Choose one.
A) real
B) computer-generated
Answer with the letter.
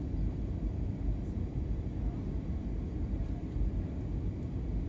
B